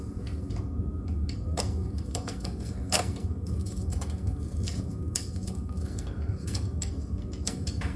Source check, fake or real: fake